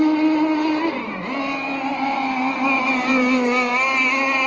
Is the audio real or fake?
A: real